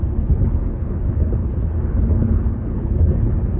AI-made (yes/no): yes